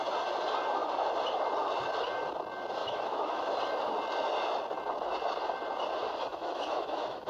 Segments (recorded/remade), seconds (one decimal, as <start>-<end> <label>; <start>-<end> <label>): 0.0-2.8 recorded; 2.8-3.5 remade; 3.5-6.3 recorded; 6.3-7.3 remade

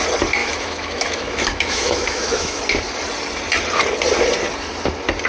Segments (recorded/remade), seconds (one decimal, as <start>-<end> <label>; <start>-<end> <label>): 0.0-0.4 recorded; 0.4-2.6 remade; 2.6-5.3 recorded

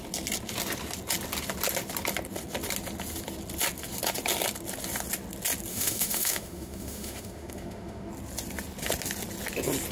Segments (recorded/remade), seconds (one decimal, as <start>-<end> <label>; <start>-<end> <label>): 0.0-5.7 recorded; 5.7-8.1 remade; 8.1-9.9 recorded

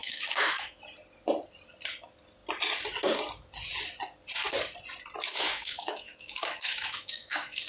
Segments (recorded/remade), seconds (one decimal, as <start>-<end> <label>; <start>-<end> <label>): 0.0-0.8 remade; 0.8-5.3 recorded; 5.3-7.7 remade